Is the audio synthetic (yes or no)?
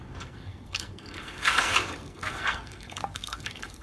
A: yes